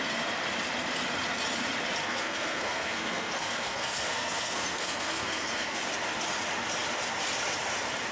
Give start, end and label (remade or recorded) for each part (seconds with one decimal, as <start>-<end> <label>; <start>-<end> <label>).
0.0-2.0 recorded; 2.0-5.8 remade; 5.8-8.1 recorded